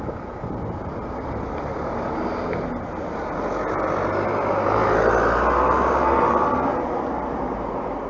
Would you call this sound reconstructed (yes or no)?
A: no